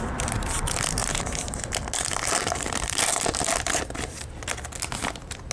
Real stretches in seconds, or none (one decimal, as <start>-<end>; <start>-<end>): 0.0-5.5

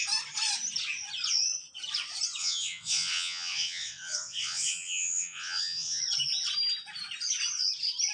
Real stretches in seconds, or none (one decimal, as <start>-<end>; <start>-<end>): 0.0-2.4; 6.0-8.1

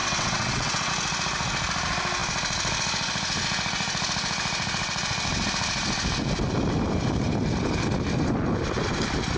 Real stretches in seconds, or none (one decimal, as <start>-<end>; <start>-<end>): 0.9-9.4